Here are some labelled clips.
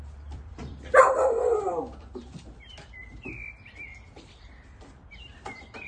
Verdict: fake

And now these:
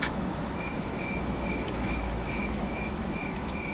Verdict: fake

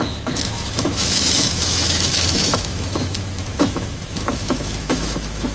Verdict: fake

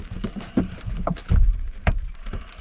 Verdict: fake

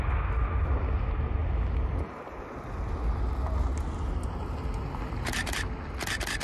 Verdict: real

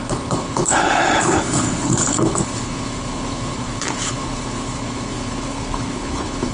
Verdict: fake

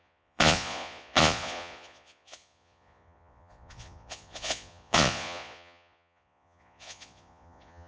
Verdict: fake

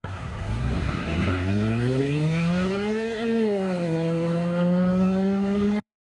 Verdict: fake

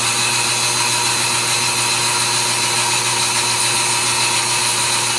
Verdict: real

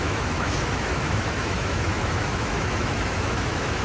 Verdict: fake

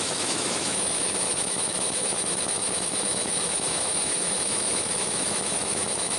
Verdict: fake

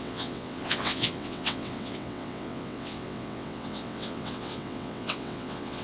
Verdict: fake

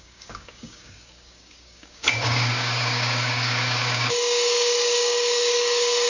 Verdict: fake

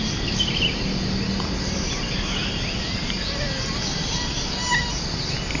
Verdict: real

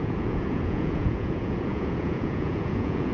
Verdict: fake